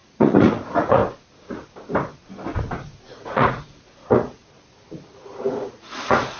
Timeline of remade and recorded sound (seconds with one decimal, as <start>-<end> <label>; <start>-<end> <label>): 0.0-1.0 remade; 1.0-3.0 recorded; 3.0-4.4 remade; 4.4-5.5 recorded; 5.5-6.4 remade